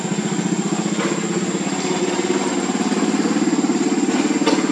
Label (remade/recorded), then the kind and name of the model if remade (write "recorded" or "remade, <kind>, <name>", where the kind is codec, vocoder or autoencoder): recorded